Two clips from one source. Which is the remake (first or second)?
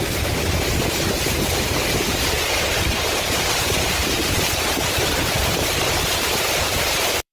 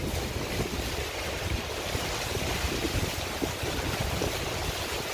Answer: first